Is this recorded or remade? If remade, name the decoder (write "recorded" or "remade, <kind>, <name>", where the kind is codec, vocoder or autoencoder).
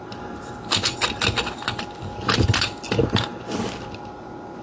recorded